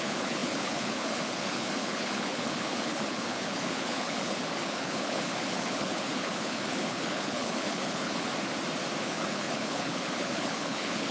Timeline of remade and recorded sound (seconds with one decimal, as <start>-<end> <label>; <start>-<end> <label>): 0.0-8.3 remade; 8.3-9.0 recorded; 9.0-11.1 remade